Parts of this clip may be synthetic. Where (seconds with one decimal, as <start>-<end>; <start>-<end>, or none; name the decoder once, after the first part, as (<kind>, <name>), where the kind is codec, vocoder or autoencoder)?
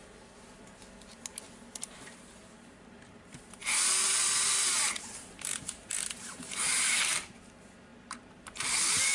1.8-9.1 (vocoder, BigVGAN v2)